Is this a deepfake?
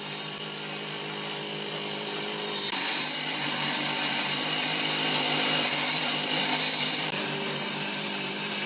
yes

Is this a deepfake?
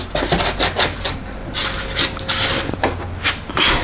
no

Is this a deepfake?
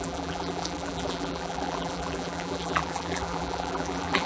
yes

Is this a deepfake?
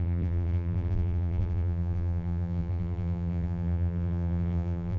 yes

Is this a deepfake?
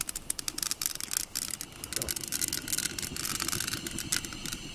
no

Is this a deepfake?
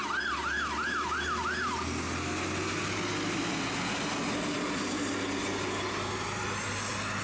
no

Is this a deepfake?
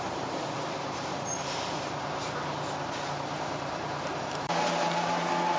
yes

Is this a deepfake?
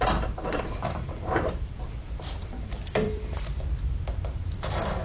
yes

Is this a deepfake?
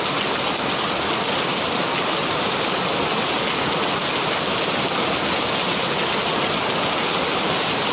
no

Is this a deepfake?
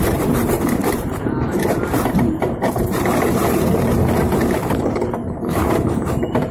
yes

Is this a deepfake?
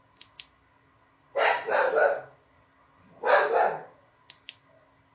no